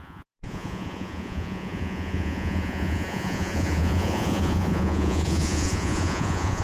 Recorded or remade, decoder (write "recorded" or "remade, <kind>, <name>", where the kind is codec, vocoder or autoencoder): remade, vocoder, Vocos